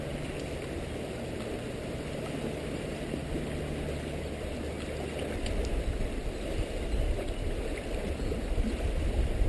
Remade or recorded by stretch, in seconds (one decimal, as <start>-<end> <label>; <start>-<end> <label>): 0.0-2.6 recorded; 2.6-3.3 remade; 3.3-9.5 recorded